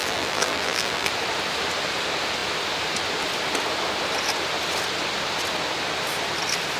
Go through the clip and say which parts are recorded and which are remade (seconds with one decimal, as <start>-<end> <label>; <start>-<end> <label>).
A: 0.0-1.1 remade; 1.1-6.8 recorded